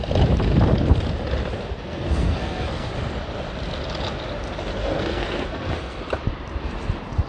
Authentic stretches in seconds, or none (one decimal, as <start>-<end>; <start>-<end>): 0.0-1.7; 2.9-4.8; 6.0-7.3

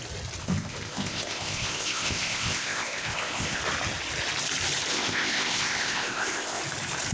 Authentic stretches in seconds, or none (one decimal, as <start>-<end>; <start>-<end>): 0.0-0.4; 3.6-4.9; 6.6-7.1